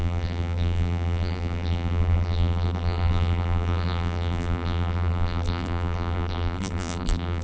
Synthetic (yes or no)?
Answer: yes